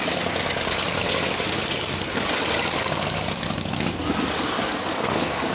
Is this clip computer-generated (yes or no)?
yes